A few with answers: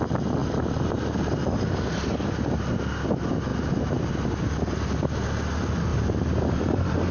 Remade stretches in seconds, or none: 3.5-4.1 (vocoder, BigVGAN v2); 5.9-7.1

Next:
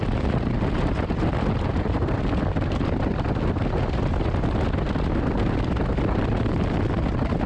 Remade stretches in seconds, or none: 0.0-2.2 (vocoder, BigVGAN v2)

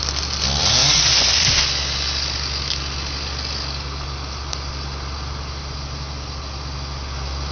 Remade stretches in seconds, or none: 0.8-1.4 (vocoder, Vocos)

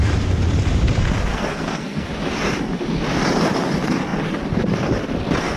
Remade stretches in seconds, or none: 1.3-2.1 (codec, SNAC)

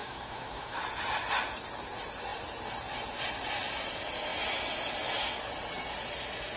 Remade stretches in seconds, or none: 0.0-0.8 (autoencoder, DAC-VAE)

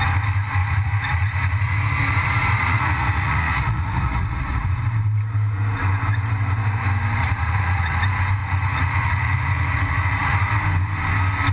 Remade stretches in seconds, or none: 0.6-4.8 (vocoder, Vocos); 7.2-8.0; 8.4-10.5